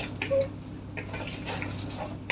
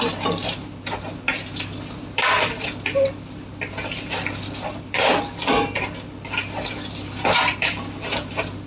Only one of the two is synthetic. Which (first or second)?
second